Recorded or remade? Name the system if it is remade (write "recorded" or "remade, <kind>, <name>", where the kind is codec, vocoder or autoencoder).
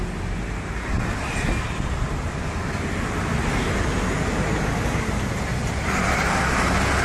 recorded